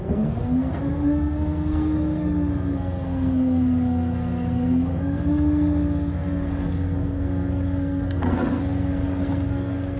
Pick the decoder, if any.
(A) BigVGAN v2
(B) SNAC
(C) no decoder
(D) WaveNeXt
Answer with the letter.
B